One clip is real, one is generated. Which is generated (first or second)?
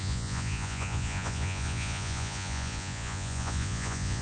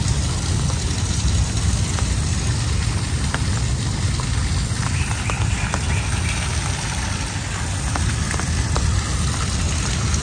first